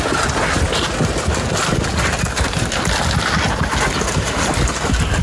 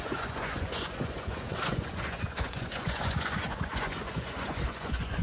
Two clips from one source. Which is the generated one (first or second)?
second